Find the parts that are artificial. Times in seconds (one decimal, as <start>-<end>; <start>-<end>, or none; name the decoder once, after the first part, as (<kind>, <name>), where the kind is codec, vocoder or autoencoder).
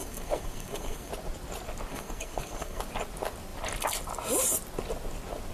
0.0-1.1 (codec, SNAC); 1.9-2.8